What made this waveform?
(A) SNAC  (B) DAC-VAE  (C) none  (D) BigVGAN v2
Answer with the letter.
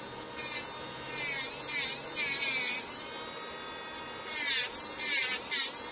C